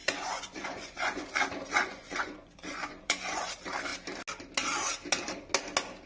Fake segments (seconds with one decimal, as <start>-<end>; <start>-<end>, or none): 0.0-1.3; 1.8-3.5